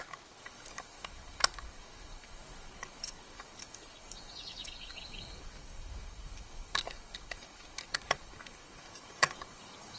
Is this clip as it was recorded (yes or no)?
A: no